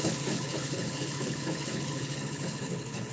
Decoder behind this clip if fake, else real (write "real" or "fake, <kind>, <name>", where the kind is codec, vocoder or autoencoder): fake, codec, HILCodec